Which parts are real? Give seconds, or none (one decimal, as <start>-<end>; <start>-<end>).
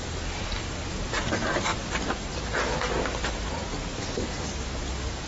0.0-5.3